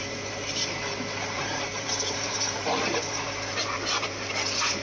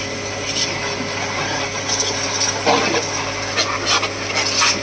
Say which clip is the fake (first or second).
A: first